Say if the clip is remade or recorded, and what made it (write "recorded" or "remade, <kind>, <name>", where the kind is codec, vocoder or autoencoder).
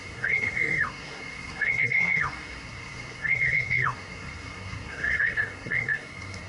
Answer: remade, codec, SNAC